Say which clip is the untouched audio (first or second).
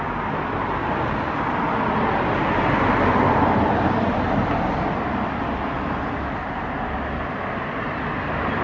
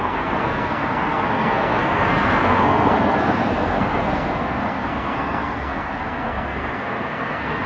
first